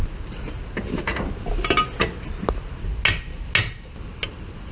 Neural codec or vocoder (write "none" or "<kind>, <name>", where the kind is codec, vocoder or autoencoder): none